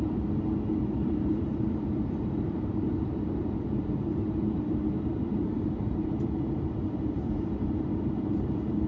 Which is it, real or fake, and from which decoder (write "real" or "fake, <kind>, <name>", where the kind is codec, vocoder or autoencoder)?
fake, vocoder, BigVGAN v2